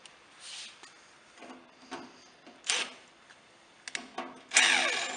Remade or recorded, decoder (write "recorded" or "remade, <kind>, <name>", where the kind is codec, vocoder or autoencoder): recorded